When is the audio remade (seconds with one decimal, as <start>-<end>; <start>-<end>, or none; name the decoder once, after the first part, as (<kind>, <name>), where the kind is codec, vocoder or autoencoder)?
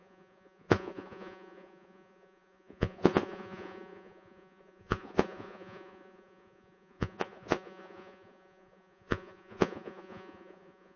0.0-11.0 (vocoder, Vocos)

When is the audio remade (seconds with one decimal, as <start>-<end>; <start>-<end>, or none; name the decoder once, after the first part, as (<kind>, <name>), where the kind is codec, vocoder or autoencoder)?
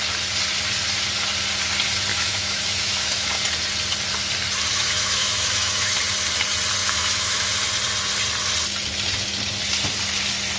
2.1-3.3 (autoencoder, DAC-VAE); 4.7-6.0; 6.8-7.5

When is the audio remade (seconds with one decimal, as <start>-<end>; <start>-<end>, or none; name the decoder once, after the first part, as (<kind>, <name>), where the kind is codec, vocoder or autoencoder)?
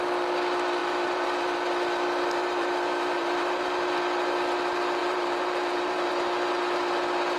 0.8-1.7 (vocoder, BigVGAN v2); 2.4-3.9; 5.0-6.1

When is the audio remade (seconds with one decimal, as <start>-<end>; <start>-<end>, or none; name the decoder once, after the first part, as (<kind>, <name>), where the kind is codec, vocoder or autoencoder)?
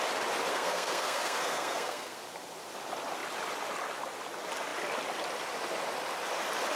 0.5-2.2 (codec, SNAC)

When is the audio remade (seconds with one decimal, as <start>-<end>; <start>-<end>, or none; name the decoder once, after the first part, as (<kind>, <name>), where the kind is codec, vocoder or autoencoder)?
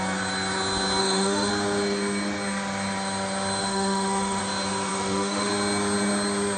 1.0-1.5 (autoencoder, DAC-VAE); 3.6-4.4; 4.9-5.5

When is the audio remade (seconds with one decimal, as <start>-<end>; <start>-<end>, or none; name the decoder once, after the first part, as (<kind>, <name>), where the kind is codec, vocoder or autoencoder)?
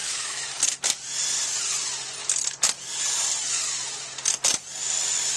0.0-0.6 (autoencoder, DAC-VAE)